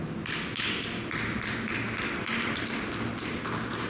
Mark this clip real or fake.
real